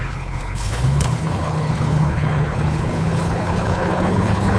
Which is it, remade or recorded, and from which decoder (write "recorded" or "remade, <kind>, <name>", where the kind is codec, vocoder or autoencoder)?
remade, codec, HILCodec